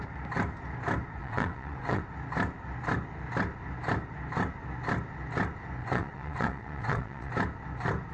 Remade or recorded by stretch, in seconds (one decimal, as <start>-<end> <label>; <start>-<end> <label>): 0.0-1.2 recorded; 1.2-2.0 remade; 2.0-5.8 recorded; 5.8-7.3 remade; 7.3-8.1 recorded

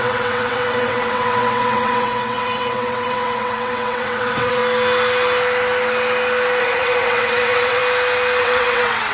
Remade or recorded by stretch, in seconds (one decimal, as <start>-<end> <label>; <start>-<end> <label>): 0.0-4.6 remade; 4.6-6.6 recorded; 6.6-7.8 remade; 7.8-8.4 recorded; 8.4-9.1 remade

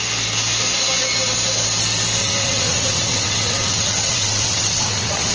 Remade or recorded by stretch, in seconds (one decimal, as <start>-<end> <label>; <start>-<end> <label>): 0.0-2.2 recorded; 2.2-5.3 remade

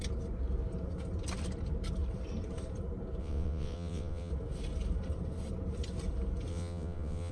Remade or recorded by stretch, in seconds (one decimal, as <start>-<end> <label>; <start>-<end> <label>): 0.0-3.2 recorded; 3.2-4.3 remade; 4.3-6.5 recorded; 6.5-7.3 remade